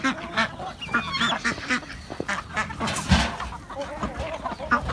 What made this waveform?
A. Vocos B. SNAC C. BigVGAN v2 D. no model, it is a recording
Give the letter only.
D